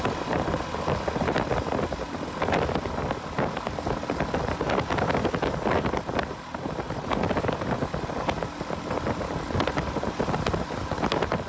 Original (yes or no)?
yes